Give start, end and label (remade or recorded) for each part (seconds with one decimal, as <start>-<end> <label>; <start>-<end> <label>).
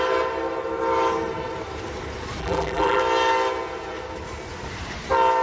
0.0-2.4 recorded; 2.4-3.0 remade; 3.0-5.4 recorded